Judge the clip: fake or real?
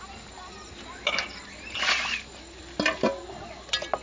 real